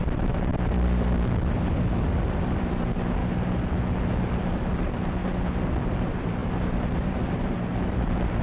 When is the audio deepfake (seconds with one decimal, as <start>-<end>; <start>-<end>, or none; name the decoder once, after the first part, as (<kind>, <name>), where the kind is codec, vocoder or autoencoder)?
0.0-3.2 (vocoder, BigVGAN v2); 4.8-5.2; 5.9-8.4